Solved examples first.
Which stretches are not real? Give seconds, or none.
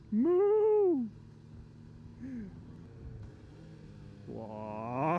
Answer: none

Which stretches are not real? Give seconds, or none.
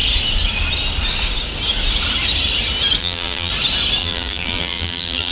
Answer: 3.0-3.5 (vocoder, BigVGAN v2); 4.0-5.3